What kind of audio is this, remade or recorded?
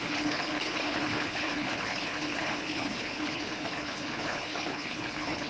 remade